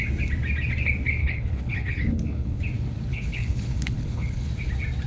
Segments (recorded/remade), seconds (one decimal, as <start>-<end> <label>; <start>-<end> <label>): 0.0-1.2 recorded; 1.2-2.6 remade; 2.6-3.1 recorded; 3.1-4.5 remade; 4.5-5.1 recorded